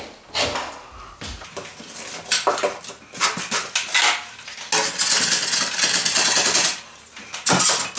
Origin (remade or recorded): recorded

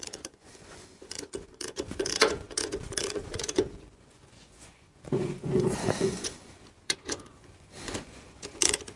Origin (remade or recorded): remade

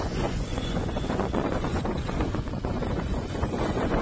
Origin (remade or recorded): remade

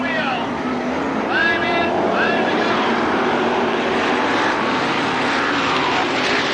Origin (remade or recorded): remade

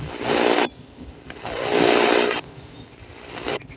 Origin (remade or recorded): recorded